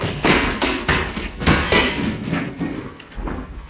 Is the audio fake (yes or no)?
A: yes